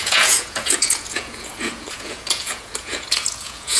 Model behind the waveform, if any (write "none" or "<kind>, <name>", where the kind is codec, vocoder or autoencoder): vocoder, Vocos